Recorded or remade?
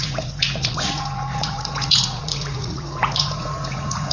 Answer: remade